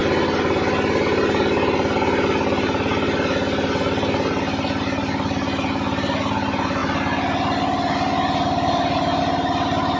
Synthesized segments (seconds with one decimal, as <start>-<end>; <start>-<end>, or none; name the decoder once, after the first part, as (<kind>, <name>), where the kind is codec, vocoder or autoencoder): none